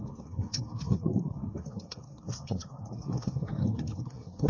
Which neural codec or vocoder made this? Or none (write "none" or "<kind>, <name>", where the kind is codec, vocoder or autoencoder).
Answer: codec, SNAC